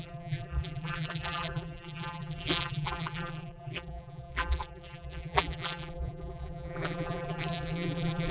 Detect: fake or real fake